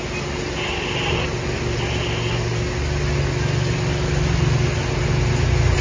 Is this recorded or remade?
recorded